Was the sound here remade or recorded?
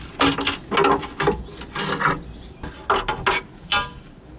recorded